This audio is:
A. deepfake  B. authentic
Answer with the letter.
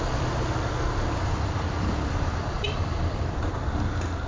A